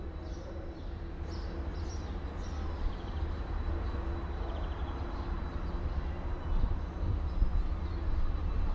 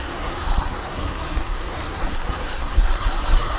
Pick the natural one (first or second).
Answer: first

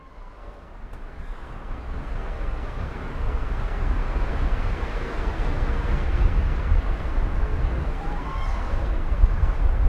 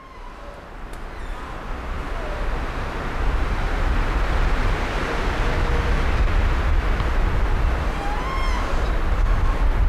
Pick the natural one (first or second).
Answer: second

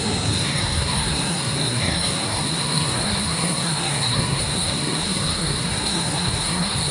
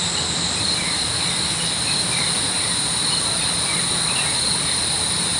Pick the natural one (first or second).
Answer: second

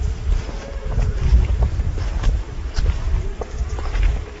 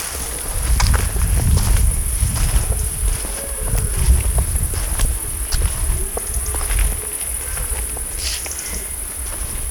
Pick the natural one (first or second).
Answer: second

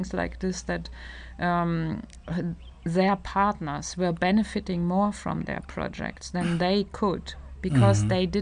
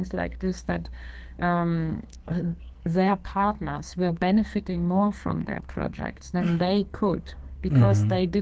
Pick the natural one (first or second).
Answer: first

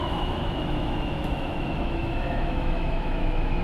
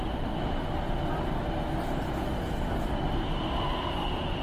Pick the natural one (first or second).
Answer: second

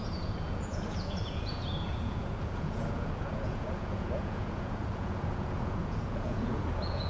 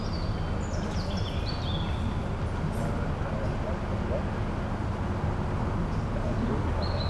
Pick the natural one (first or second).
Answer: second